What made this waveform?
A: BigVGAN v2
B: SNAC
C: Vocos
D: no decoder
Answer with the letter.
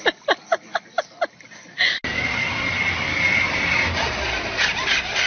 D